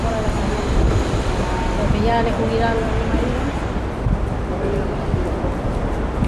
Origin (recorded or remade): recorded